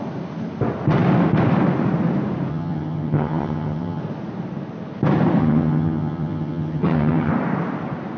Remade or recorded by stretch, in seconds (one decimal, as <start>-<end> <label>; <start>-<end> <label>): 0.0-2.5 recorded; 2.5-4.0 remade; 4.0-5.4 recorded; 5.4-7.3 remade; 7.3-8.2 recorded